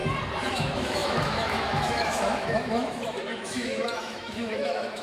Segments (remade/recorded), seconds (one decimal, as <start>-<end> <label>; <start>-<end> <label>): 0.0-0.5 recorded; 0.5-5.0 remade